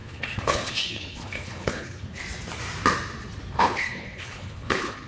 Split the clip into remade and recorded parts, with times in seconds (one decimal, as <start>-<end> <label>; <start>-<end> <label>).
0.0-2.2 remade; 2.2-3.6 recorded; 3.6-5.1 remade

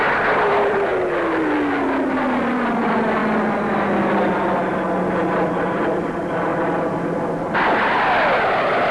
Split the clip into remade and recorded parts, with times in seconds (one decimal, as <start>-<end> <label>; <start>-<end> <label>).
0.0-0.9 remade; 0.9-2.4 recorded; 2.4-3.2 remade; 3.2-5.6 recorded; 5.6-6.5 remade; 6.5-8.5 recorded; 8.5-8.9 remade

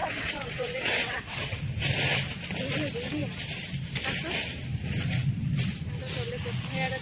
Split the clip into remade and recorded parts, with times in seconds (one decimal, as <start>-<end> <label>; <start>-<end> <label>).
0.0-1.6 remade; 1.6-7.0 recorded

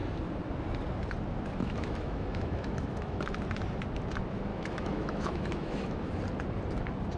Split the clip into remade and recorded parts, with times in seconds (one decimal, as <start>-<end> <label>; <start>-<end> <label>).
0.0-1.6 recorded; 1.6-3.2 remade; 3.2-4.5 recorded; 4.5-6.1 remade; 6.1-7.2 recorded

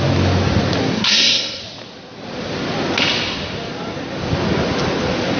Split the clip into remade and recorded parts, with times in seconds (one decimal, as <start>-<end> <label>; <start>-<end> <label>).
0.0-0.8 recorded; 0.8-1.6 remade; 1.6-5.4 recorded

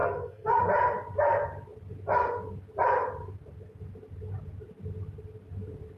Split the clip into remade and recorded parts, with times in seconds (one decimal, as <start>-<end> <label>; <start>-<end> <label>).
0.0-0.6 remade; 0.6-6.0 recorded